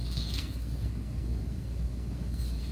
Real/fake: fake